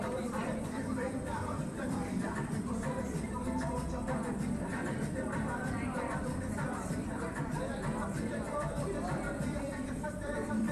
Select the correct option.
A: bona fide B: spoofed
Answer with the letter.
B